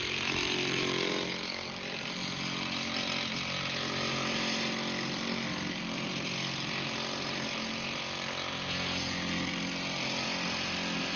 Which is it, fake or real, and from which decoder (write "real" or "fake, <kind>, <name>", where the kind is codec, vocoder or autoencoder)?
real